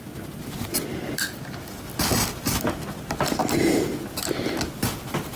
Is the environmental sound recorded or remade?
recorded